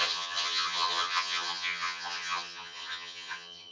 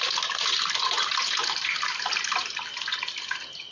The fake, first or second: first